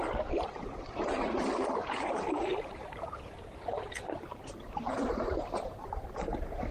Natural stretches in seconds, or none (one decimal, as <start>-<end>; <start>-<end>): 0.0-2.5

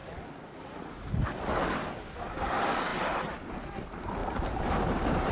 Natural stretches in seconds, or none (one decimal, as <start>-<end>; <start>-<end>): 0.0-4.2

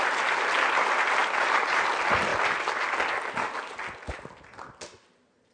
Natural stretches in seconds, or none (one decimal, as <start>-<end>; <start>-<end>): 0.0-1.2; 1.9-5.5

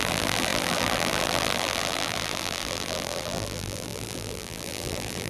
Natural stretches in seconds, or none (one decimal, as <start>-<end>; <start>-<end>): none

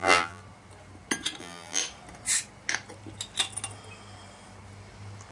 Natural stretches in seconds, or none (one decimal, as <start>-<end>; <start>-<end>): 0.4-1.4; 1.8-5.3

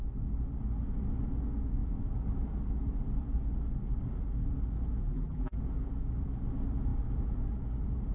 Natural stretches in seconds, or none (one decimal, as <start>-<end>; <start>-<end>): 0.0-5.0; 5.6-8.1

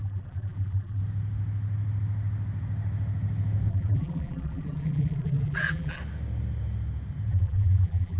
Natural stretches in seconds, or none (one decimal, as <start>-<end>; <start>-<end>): 1.0-3.7; 6.0-7.3